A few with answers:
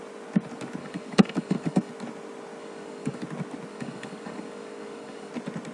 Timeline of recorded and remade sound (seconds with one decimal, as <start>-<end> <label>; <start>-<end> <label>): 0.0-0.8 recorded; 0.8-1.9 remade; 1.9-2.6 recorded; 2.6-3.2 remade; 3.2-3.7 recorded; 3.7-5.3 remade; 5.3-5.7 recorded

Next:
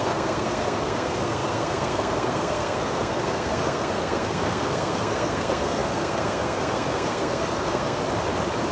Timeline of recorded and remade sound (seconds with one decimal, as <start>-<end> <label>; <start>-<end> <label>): 0.0-8.0 remade; 8.0-8.7 recorded

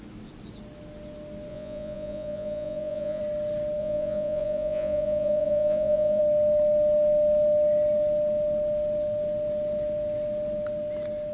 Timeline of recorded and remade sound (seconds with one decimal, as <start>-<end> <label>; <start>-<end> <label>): 0.0-1.5 recorded; 1.5-3.2 remade; 3.2-3.8 recorded; 3.8-6.2 remade; 6.2-11.3 recorded

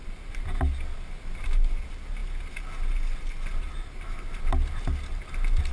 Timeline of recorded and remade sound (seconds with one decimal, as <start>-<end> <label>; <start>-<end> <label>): 0.0-5.7 recorded

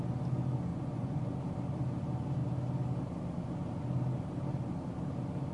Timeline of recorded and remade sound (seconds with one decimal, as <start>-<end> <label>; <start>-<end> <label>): 0.0-0.7 recorded; 0.7-1.3 remade; 1.3-5.5 recorded